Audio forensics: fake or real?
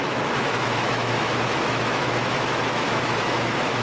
fake